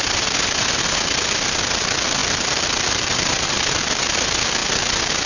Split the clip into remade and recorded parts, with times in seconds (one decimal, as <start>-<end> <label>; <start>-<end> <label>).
0.0-5.3 recorded